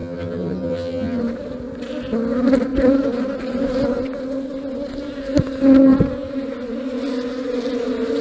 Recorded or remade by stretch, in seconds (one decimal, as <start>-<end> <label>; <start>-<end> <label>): 0.0-1.2 remade; 1.2-8.2 recorded